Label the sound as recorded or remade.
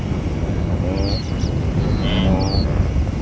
recorded